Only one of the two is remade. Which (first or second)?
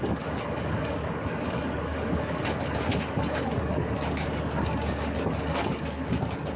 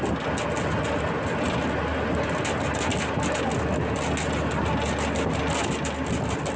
first